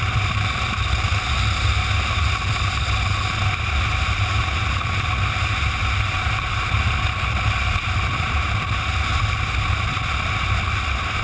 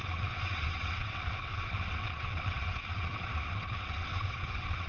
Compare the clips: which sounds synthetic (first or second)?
second